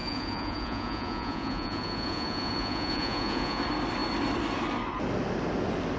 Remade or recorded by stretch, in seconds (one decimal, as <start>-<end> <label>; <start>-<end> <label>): 0.0-3.6 remade; 3.6-6.0 recorded